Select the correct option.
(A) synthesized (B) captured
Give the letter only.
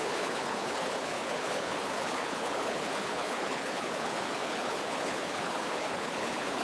A